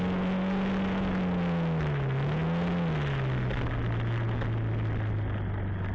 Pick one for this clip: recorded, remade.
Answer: recorded